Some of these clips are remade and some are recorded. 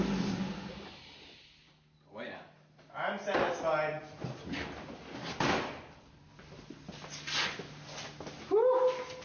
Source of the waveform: recorded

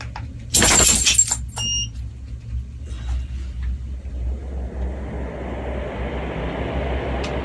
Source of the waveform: recorded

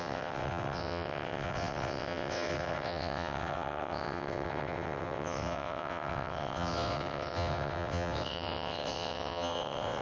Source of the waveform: remade